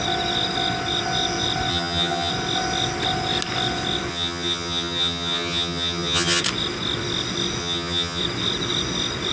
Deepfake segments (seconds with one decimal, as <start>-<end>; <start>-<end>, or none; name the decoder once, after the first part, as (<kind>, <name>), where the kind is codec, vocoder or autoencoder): 1.7-2.3 (vocoder, HiFi-GAN); 4.1-6.4; 7.6-8.2